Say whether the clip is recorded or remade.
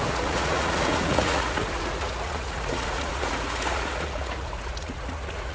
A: remade